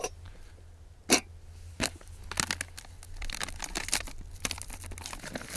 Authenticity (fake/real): real